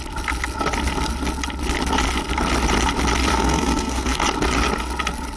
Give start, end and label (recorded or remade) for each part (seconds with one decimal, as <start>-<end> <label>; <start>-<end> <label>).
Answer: 0.0-3.3 recorded; 3.3-4.2 remade; 4.2-5.4 recorded